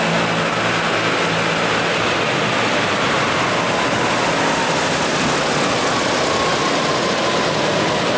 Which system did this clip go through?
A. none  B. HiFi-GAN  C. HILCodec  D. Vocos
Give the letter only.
A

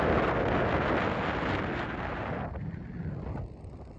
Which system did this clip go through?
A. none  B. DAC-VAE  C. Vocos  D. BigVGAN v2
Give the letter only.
A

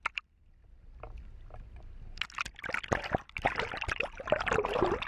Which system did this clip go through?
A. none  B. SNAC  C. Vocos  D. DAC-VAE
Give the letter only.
A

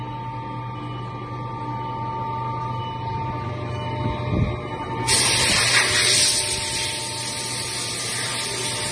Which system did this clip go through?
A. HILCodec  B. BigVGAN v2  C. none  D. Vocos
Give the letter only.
C